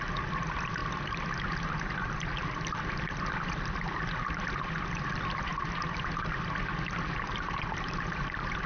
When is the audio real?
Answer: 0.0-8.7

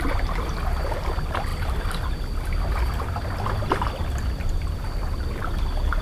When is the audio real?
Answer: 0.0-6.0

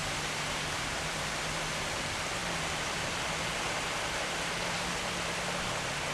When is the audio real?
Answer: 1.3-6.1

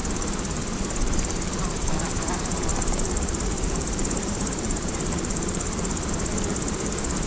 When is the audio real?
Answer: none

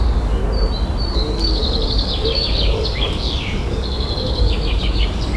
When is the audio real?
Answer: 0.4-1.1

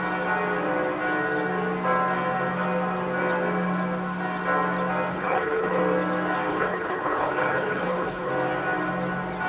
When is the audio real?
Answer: 0.0-5.1; 5.8-6.5; 8.3-9.5

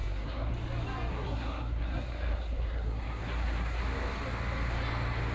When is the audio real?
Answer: 0.5-1.1; 3.8-5.3

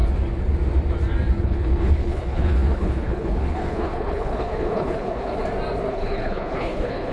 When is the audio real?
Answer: 0.0-1.4; 5.4-5.9